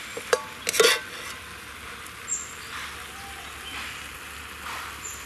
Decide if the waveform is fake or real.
real